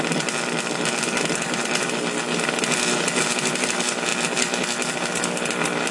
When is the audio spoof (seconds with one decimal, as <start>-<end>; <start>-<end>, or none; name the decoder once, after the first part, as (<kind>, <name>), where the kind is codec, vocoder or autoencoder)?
none